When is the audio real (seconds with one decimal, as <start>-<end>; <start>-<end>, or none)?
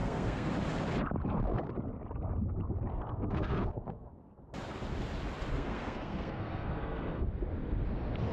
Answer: 0.5-2.9; 4.1-5.5; 7.3-8.3